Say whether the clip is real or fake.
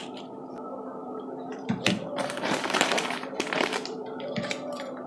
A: fake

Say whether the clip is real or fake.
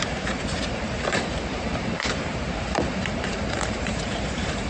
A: fake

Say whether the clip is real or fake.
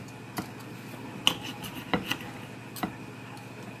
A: real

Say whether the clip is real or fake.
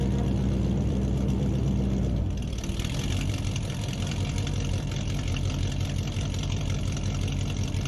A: fake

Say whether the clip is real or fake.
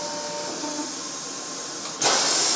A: real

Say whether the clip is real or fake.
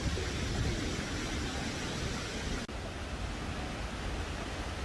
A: real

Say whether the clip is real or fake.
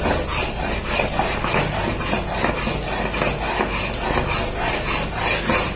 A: real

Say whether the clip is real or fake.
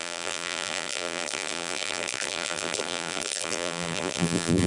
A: fake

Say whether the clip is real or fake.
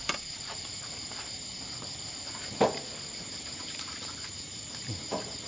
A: fake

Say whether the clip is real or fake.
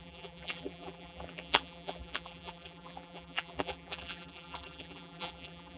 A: fake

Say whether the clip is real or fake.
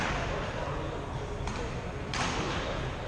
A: real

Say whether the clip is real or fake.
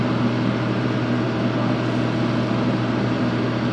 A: real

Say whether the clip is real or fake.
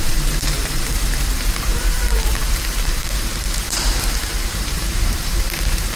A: fake